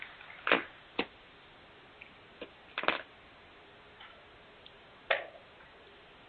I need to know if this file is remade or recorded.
recorded